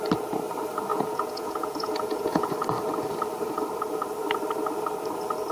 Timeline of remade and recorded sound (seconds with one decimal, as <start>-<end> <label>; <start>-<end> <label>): 0.0-0.9 recorded; 0.9-2.5 remade; 2.5-5.5 recorded